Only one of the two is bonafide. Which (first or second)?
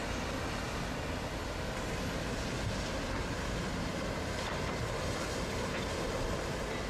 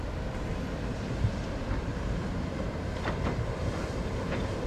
first